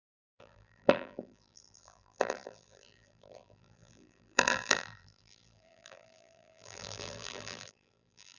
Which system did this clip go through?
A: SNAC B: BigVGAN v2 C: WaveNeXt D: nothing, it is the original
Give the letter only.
B